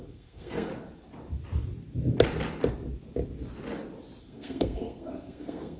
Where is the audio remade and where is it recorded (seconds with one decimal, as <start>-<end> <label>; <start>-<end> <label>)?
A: 0.0-0.7 remade; 0.7-4.2 recorded; 4.2-5.8 remade